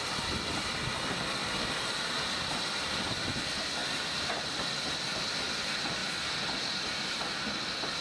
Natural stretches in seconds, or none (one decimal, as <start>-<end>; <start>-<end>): 0.0-1.4; 2.4-3.8; 4.8-8.0

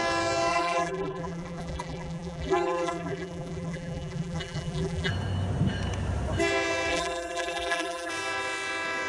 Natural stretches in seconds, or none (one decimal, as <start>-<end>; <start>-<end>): 0.0-0.5; 5.1-6.9; 8.1-9.1

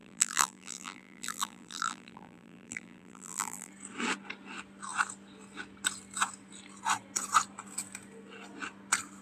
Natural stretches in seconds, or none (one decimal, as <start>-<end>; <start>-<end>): 3.7-9.2

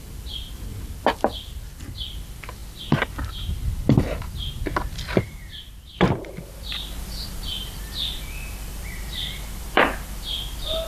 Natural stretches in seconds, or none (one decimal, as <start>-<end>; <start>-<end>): 2.6-7.0

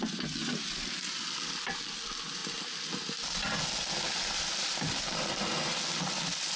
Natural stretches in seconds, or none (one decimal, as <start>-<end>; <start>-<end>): 0.0-6.6

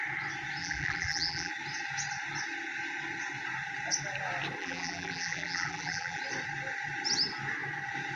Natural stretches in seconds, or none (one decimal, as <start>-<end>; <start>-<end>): 0.0-0.6; 1.5-4.6; 6.2-8.2